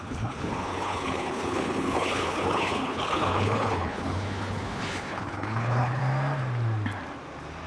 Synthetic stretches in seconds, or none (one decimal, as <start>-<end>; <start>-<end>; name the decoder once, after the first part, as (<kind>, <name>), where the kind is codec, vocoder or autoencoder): 0.0-6.0 (codec, HILCodec)